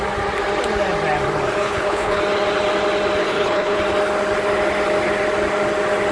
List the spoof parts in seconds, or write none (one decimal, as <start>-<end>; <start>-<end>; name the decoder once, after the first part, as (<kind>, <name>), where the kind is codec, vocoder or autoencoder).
1.6-2.2 (codec, HILCodec); 3.2-3.8